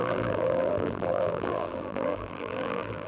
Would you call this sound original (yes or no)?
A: no